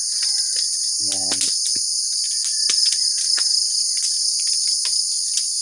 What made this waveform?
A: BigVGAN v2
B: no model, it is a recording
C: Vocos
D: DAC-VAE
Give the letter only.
B